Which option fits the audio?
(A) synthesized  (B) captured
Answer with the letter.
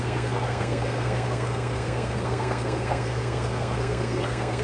A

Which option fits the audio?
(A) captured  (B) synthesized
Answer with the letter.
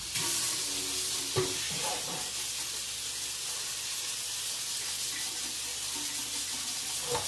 A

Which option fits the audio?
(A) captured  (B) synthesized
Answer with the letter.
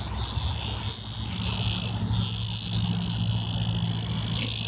A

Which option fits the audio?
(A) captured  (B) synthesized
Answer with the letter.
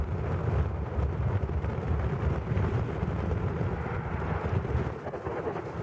A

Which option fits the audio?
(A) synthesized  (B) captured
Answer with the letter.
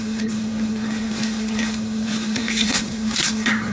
A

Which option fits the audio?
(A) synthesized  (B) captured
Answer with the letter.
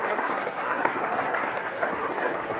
A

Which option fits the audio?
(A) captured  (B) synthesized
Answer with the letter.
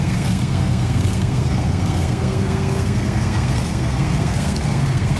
B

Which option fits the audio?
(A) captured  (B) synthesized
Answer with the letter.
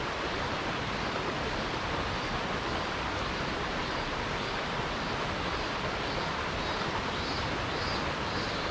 A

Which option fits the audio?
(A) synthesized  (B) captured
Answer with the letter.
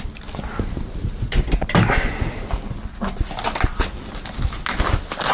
B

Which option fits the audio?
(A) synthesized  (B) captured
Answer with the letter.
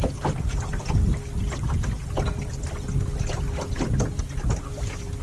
B